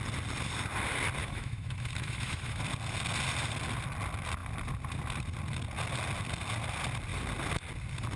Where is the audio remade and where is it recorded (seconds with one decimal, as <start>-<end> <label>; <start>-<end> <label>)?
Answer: 0.0-1.2 recorded; 1.2-2.6 remade; 2.6-8.2 recorded